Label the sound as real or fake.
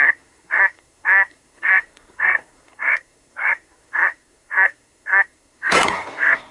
fake